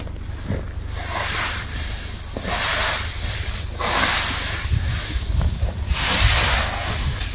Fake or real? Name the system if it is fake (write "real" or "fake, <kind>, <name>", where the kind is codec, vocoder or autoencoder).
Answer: real